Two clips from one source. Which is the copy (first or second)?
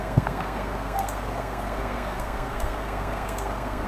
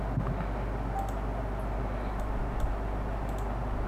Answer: first